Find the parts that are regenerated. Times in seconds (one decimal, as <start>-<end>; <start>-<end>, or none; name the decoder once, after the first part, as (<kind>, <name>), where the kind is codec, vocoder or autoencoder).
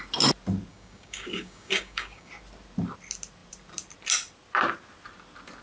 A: 0.7-2.3 (codec, DAC)